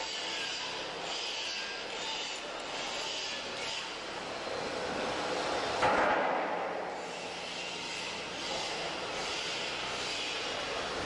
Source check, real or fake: real